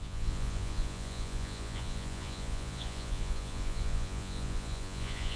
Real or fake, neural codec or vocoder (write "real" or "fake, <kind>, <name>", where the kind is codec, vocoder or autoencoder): fake, vocoder, Vocos